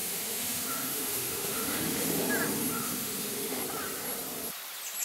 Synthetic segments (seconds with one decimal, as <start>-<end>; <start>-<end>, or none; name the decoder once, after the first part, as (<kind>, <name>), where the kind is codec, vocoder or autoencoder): 0.0-2.3 (autoencoder, DAC-VAE); 2.7-3.6